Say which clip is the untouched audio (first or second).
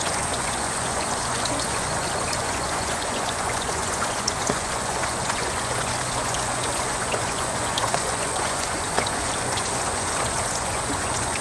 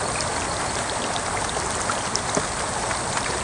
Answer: second